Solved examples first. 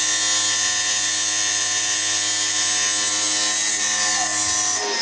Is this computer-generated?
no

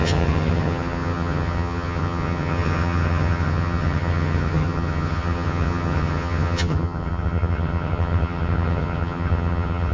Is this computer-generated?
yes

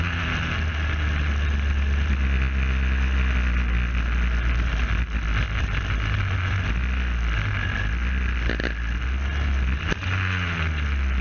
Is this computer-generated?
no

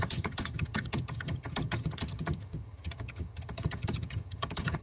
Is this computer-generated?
yes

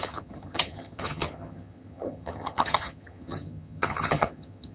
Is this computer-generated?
yes